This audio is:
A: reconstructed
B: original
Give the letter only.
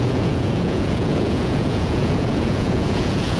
A